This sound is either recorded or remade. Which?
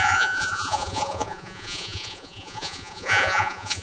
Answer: remade